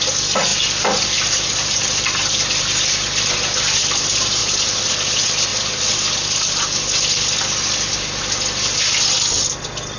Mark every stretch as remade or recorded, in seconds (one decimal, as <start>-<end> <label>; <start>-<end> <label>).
0.0-0.5 recorded; 0.5-2.5 remade; 2.5-4.4 recorded; 4.4-4.9 remade; 4.9-10.0 recorded